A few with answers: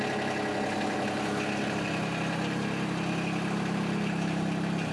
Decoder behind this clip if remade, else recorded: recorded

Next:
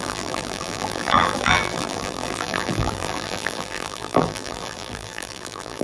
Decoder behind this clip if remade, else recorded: remade, vocoder, BigVGAN v2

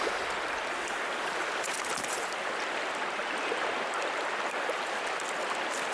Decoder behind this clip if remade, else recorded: recorded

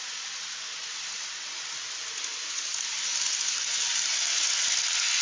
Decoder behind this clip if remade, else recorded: recorded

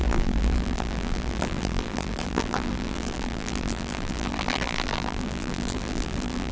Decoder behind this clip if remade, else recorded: remade, vocoder, BigVGAN v2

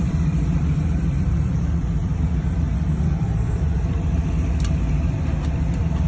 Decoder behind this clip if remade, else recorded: remade, vocoder, BigVGAN v2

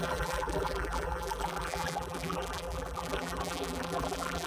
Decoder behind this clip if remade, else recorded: remade, vocoder, BigVGAN v2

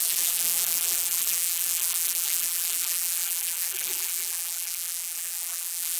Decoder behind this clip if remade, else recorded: remade, vocoder, BigVGAN v2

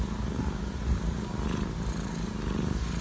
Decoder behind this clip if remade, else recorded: recorded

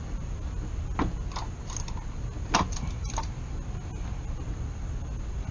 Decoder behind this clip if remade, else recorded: recorded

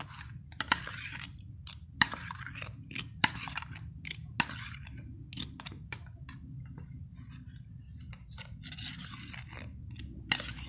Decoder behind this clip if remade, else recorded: recorded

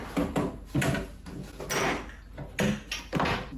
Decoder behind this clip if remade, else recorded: recorded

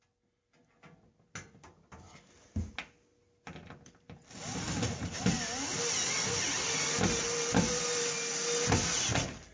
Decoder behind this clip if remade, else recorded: recorded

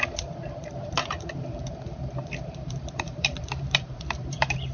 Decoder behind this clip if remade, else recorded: remade, vocoder, BigVGAN v2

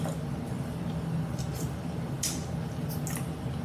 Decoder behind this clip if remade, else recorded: recorded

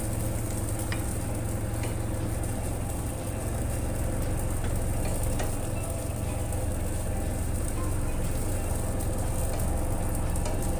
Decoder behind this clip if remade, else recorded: recorded